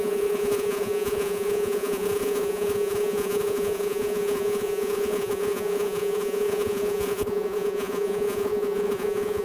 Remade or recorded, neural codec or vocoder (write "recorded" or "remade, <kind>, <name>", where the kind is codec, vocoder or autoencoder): remade, vocoder, Vocos